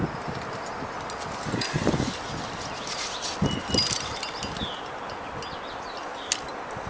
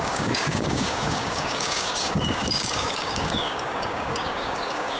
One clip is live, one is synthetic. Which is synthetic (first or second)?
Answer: second